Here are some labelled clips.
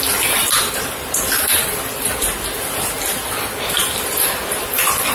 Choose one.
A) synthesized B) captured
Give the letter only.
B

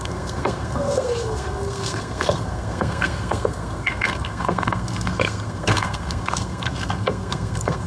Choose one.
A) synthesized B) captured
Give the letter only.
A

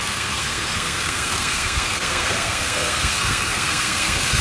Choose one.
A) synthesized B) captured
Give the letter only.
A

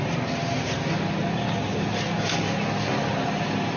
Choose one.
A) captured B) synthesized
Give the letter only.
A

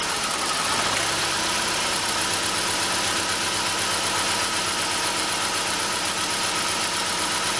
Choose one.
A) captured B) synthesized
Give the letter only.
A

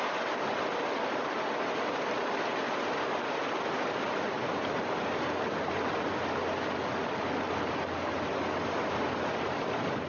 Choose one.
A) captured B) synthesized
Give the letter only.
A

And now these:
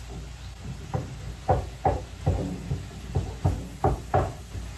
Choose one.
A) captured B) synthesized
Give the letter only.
A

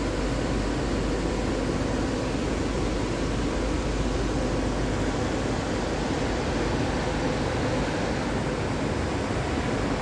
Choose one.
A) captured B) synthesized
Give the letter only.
A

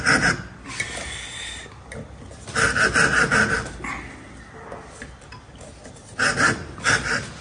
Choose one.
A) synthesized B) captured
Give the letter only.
B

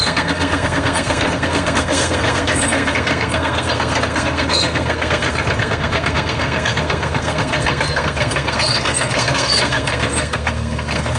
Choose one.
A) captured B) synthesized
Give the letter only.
B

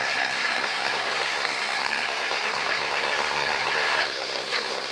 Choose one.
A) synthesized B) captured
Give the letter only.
A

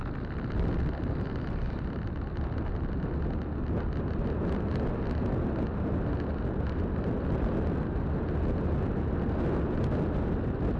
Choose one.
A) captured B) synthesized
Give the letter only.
A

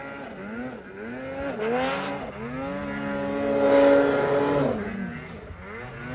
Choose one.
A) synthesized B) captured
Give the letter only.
B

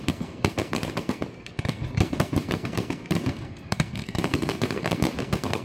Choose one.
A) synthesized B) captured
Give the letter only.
A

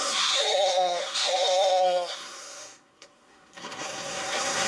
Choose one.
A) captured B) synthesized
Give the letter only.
B